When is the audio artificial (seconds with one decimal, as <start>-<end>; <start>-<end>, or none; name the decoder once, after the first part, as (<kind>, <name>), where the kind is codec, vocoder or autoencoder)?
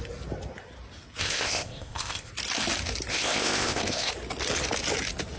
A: 1.2-2.3 (codec, ZipCodec); 3.1-4.1